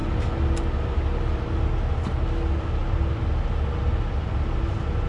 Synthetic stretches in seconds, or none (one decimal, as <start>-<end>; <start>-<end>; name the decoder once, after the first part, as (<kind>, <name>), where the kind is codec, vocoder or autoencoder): none